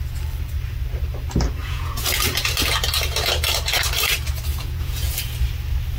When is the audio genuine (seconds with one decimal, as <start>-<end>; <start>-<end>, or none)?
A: 0.0-1.6; 2.1-4.5; 5.1-6.0